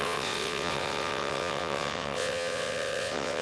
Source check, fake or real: fake